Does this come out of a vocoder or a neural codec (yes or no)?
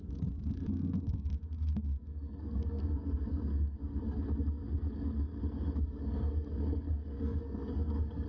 yes